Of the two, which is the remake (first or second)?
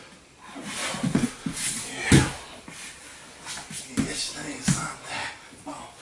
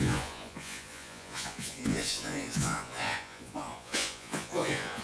second